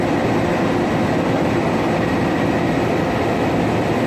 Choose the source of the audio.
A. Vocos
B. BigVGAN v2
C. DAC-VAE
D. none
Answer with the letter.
D